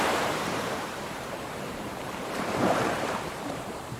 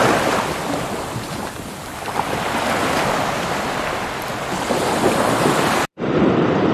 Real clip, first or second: second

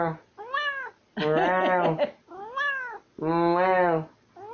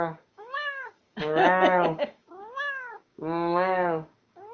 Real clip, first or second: first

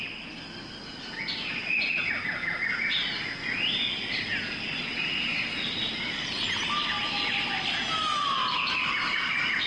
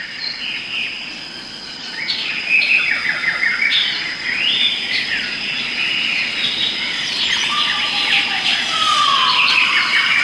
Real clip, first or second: first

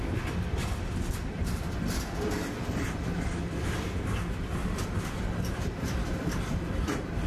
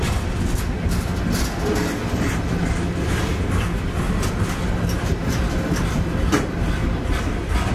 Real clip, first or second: second